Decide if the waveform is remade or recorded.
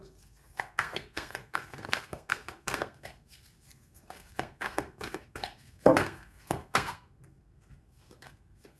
remade